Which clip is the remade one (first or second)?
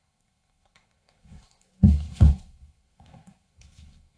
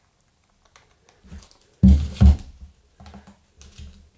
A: first